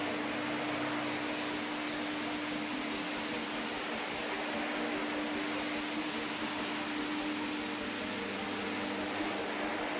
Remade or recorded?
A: recorded